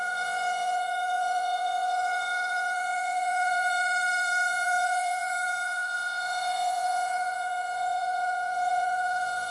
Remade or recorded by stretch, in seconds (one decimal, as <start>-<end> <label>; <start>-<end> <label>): 0.0-9.5 remade